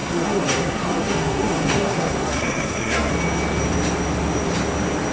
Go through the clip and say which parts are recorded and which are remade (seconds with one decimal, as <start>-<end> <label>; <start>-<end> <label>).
0.0-3.1 remade; 3.1-5.1 recorded